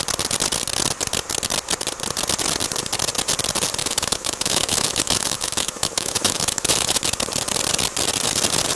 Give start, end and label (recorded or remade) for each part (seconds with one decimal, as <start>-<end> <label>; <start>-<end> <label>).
0.0-3.8 recorded; 3.8-7.0 remade; 7.0-8.8 recorded